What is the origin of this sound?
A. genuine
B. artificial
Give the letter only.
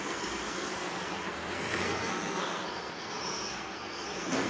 B